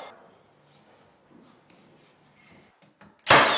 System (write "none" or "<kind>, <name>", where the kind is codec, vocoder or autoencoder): none